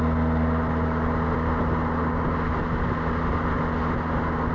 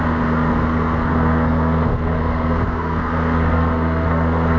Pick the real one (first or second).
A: first